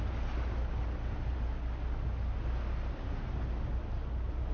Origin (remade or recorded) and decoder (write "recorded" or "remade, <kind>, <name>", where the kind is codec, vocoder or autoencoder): recorded